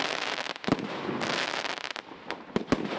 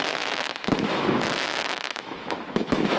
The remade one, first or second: second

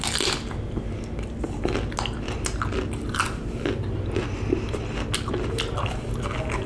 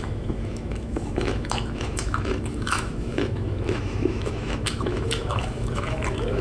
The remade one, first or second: second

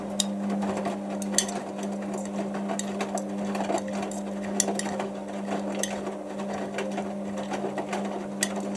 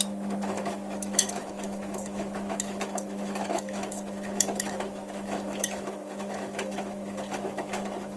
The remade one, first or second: second